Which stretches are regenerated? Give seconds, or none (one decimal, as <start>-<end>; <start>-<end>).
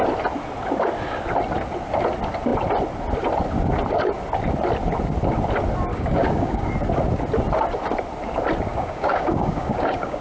5.9-6.7; 8.7-10.2